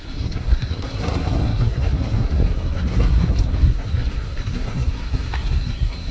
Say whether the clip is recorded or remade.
remade